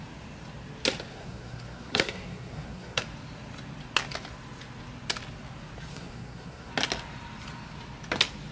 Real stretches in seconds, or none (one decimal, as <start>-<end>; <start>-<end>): 0.0-1.1; 3.0-5.9; 6.7-8.5